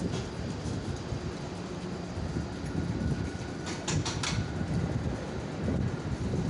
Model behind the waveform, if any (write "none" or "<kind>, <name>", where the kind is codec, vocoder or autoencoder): none